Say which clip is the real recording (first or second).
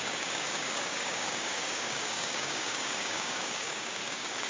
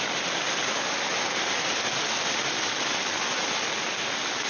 second